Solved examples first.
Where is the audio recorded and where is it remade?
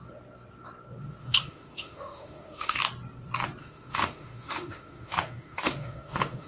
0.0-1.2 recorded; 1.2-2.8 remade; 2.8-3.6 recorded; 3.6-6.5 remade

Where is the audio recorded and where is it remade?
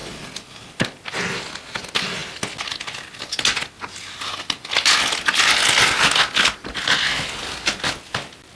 0.0-8.6 recorded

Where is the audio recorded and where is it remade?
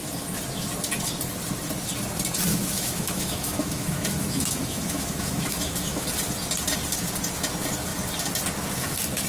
0.0-2.5 recorded; 2.5-6.1 remade; 6.1-9.3 recorded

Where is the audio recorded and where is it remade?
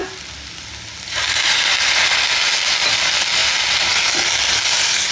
0.0-5.1 recorded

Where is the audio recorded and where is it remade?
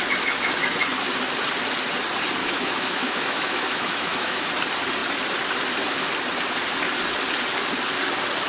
0.0-2.4 recorded; 2.4-4.5 remade; 4.5-8.5 recorded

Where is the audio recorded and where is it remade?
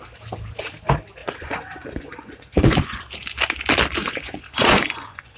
0.0-1.2 recorded; 1.2-3.0 remade; 3.0-4.0 recorded; 4.0-5.4 remade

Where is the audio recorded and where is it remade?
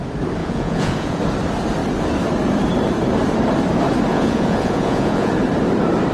0.0-0.4 recorded; 0.4-1.2 remade; 1.2-4.1 recorded; 4.1-5.3 remade; 5.3-6.1 recorded